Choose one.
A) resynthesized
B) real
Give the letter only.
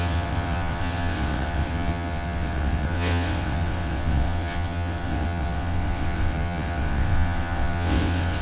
A